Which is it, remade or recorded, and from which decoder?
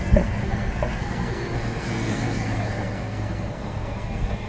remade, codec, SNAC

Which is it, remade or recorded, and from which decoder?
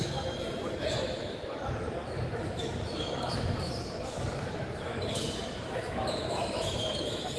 remade, autoencoder, DAC-VAE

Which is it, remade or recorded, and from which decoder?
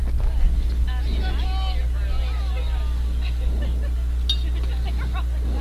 recorded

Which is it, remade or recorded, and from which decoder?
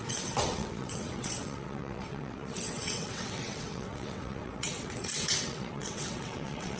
remade, vocoder, WaveNeXt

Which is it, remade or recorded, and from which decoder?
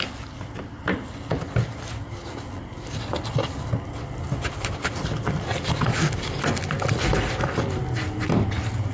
recorded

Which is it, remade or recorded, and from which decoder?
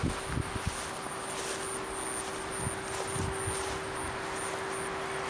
recorded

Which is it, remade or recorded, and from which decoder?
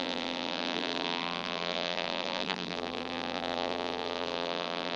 remade, vocoder, BigVGAN v2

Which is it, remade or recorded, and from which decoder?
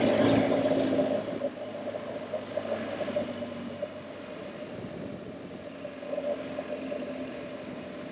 recorded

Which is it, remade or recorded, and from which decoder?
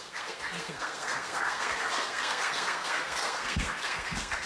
remade, codec, SNAC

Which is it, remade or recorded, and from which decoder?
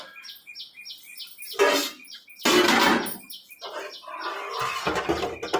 recorded